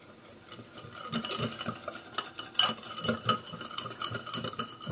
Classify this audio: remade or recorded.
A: recorded